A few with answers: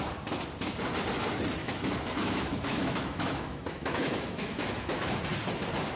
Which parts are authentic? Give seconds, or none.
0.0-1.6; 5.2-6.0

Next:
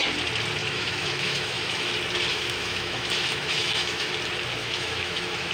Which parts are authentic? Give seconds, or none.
0.0-0.6; 1.9-2.3; 4.1-4.6

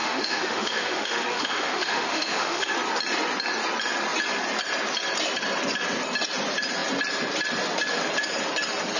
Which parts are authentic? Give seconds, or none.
2.7-9.0

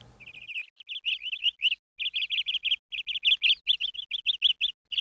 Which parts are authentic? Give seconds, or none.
0.0-5.0

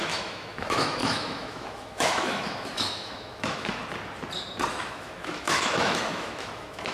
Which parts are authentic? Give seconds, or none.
3.8-4.7

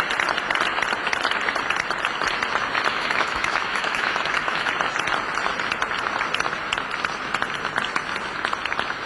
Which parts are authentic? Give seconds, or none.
0.0-2.9; 4.7-9.1

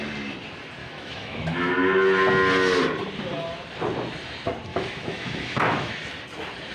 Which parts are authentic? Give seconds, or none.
0.0-0.8; 1.7-4.7; 5.9-6.7